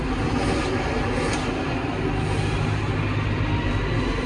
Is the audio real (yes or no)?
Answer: yes